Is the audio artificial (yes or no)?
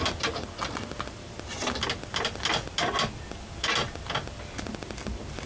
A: no